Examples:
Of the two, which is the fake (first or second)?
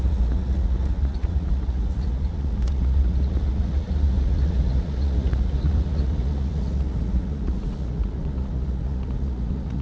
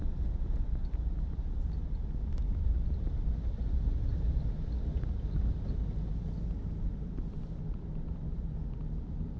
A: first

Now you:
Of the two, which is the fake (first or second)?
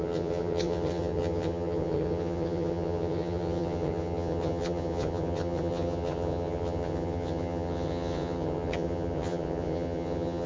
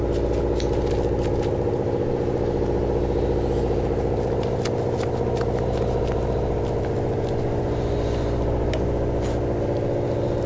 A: first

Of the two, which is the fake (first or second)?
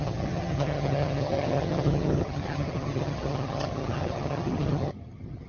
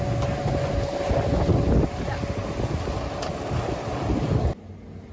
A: first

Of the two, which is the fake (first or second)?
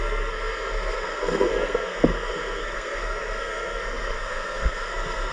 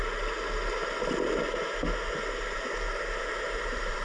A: first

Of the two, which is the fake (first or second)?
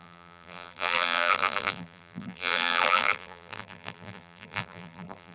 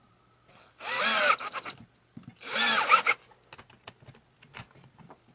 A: first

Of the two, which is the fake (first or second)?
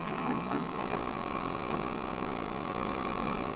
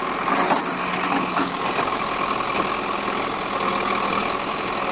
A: first